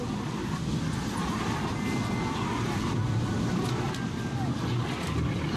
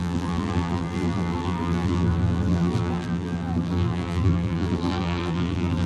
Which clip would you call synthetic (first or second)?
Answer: second